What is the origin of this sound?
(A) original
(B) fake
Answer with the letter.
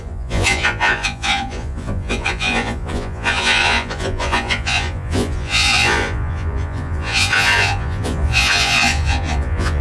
B